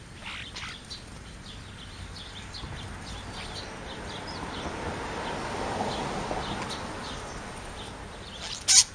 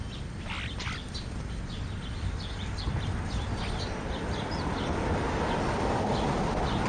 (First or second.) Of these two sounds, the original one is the first